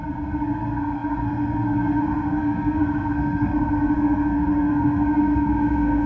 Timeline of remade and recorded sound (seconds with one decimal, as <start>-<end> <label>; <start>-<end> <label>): 0.0-6.1 remade